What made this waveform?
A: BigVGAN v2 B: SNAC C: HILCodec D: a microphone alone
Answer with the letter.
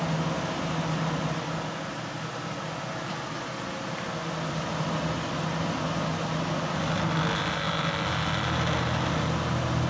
D